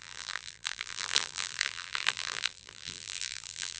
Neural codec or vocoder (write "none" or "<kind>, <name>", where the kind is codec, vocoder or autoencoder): vocoder, BigVGAN v2